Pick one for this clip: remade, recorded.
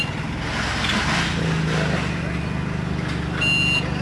recorded